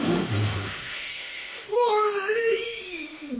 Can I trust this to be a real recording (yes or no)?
no